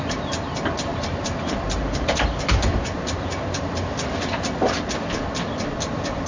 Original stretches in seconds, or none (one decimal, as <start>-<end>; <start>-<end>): 0.0-0.9; 3.7-6.3